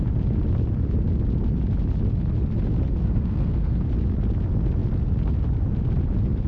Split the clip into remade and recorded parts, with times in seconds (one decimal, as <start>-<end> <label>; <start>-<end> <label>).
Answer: 0.0-3.0 recorded; 3.0-3.8 remade; 3.8-6.5 recorded